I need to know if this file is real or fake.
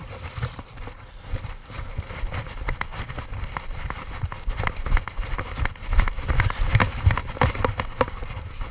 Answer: real